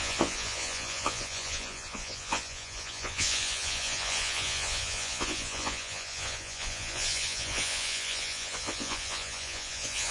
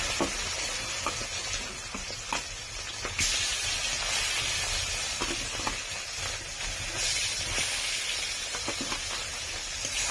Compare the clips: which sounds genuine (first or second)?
second